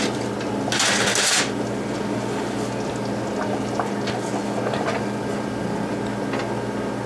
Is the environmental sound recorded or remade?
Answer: recorded